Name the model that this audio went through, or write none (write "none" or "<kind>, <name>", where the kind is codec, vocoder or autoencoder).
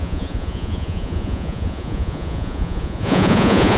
vocoder, Vocos